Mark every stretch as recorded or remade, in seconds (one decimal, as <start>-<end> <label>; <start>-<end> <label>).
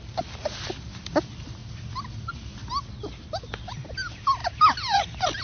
0.0-1.6 recorded; 1.6-2.3 remade; 2.3-4.4 recorded; 4.4-5.4 remade